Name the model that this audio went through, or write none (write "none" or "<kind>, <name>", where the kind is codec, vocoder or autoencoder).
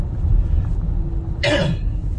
none